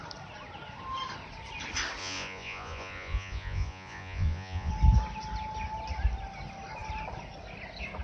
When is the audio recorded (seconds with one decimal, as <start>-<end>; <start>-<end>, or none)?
0.0-2.0; 4.7-8.0